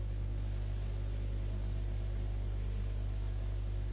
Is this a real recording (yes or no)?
yes